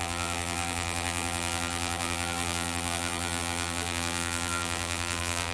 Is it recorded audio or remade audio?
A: remade